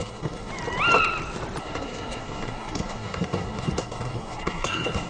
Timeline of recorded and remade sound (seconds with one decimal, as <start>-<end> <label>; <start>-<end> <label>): 0.0-0.5 remade; 0.5-1.6 recorded; 1.6-5.1 remade